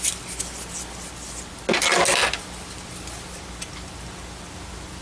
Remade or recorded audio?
recorded